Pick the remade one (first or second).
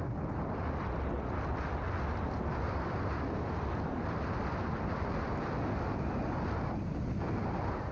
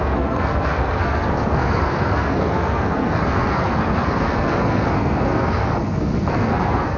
second